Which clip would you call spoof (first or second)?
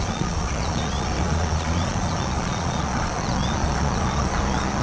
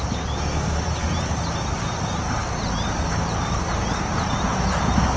first